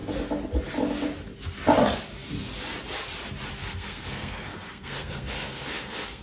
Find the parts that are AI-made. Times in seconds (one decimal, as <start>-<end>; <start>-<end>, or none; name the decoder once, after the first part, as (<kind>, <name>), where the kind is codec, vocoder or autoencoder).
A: 3.6-6.2 (codec, SNAC)